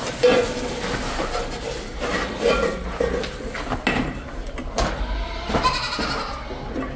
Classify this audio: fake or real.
real